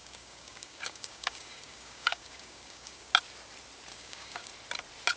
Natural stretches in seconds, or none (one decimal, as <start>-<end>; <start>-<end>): 3.1-3.9; 4.5-5.2